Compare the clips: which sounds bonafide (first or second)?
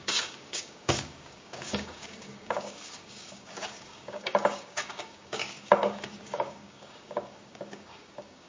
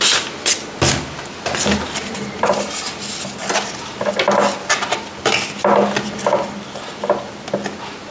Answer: second